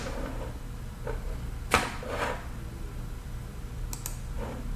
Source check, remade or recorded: recorded